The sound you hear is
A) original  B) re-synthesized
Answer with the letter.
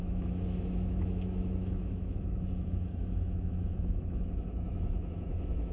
B